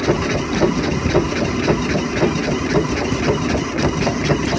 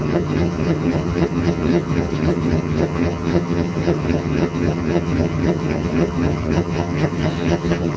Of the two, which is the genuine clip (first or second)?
first